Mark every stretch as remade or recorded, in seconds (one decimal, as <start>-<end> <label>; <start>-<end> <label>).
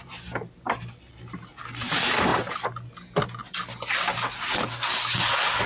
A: 0.0-5.7 recorded